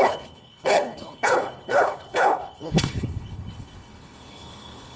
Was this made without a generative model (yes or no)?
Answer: no